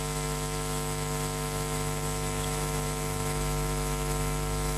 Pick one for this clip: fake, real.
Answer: fake